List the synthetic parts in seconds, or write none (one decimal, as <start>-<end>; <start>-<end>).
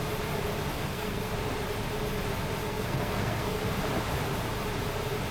0.7-1.3; 2.6-3.7